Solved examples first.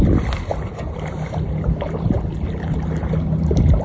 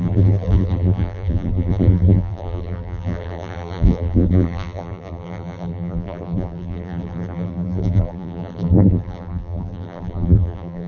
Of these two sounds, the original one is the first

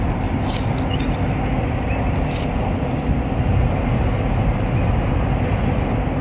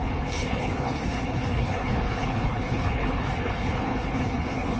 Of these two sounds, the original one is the first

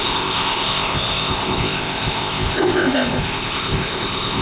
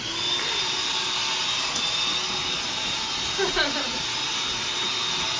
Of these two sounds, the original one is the second